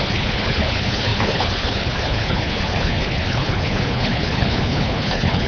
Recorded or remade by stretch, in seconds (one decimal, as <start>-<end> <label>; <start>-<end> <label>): 0.0-5.5 remade